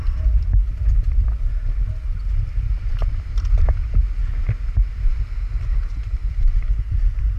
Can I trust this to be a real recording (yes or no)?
yes